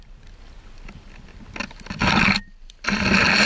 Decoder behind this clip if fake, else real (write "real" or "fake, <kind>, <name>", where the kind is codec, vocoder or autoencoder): real